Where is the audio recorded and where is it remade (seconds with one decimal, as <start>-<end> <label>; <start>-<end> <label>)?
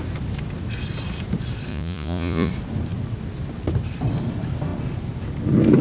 0.0-1.7 recorded; 1.7-2.5 remade; 2.5-5.8 recorded